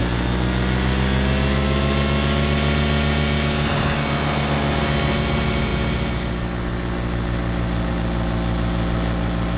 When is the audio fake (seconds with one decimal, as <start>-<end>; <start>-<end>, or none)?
none